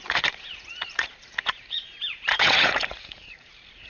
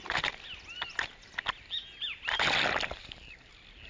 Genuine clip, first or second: second